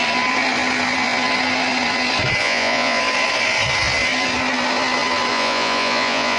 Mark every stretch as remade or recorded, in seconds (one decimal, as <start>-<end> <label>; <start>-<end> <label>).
0.0-2.4 recorded; 2.4-3.0 remade; 3.0-5.3 recorded; 5.3-6.4 remade